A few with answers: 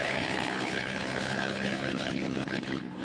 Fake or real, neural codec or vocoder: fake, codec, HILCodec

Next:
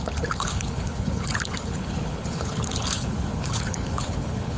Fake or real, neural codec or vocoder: fake, codec, HILCodec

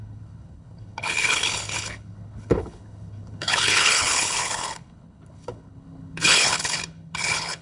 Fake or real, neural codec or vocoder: fake, codec, HILCodec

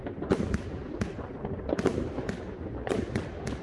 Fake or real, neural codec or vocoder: real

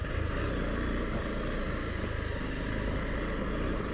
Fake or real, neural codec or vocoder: real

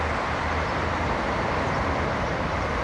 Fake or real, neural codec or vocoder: real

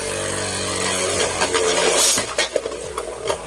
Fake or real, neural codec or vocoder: real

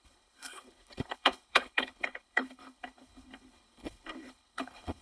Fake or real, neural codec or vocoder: fake, codec, HILCodec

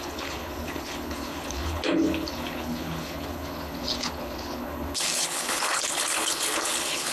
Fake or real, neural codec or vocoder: fake, codec, HILCodec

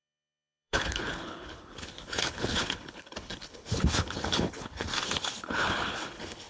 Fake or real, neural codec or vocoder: fake, codec, HILCodec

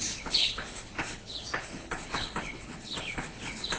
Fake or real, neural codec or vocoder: fake, codec, HILCodec